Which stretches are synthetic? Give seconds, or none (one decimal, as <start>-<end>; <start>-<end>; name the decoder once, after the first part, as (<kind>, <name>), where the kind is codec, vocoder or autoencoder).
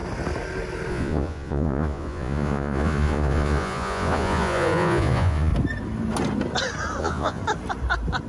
0.9-5.5 (vocoder, Vocos); 7.0-7.4